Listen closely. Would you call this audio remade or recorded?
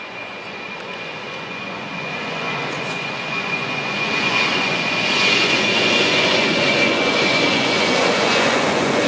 remade